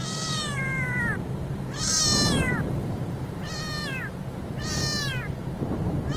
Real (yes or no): no